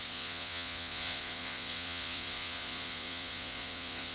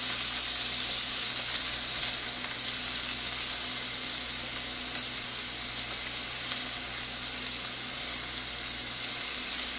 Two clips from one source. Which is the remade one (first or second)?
first